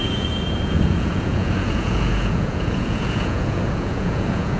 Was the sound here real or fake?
fake